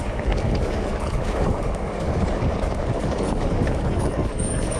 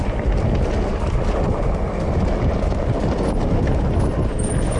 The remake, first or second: first